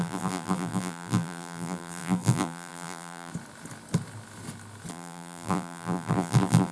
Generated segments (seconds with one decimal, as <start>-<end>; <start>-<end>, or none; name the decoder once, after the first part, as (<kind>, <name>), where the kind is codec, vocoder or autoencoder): 0.0-3.3 (vocoder, BigVGAN v2); 4.9-6.7